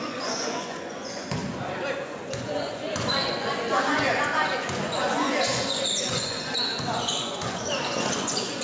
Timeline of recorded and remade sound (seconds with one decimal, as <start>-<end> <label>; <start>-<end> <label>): 0.0-1.4 remade; 1.4-2.0 recorded; 2.0-8.6 remade